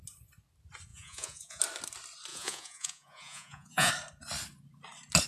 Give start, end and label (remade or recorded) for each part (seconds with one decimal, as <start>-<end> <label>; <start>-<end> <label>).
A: 0.0-0.9 recorded; 0.9-1.6 remade; 1.6-2.3 recorded; 2.3-3.9 remade; 3.9-5.3 recorded